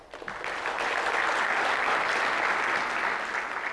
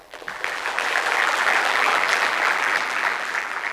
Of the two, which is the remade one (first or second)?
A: second